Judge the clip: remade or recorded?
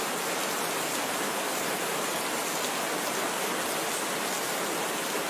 recorded